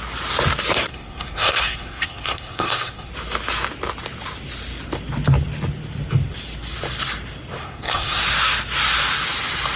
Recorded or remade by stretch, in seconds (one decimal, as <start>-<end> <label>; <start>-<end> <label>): 0.0-0.9 recorded; 0.9-3.1 remade; 3.1-7.6 recorded; 7.6-8.2 remade; 8.2-9.8 recorded